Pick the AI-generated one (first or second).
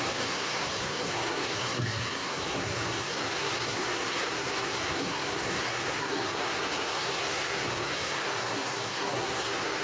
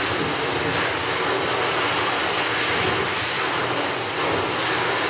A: first